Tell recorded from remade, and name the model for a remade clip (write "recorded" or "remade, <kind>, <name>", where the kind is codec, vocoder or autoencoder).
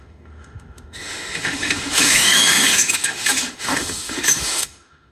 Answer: remade, autoencoder, DAC-VAE